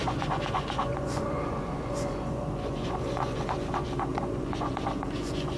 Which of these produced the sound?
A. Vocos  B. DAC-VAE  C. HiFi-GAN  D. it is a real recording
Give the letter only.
A